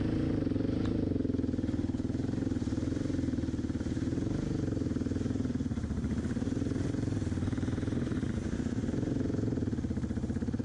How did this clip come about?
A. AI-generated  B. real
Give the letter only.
A